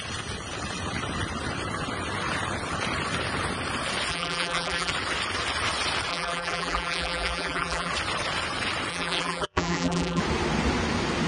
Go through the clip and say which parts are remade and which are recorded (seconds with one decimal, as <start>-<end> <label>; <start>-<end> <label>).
0.0-4.1 recorded; 4.1-4.9 remade; 4.9-6.1 recorded; 6.1-7.9 remade; 7.9-8.9 recorded; 8.9-10.2 remade; 10.2-11.3 recorded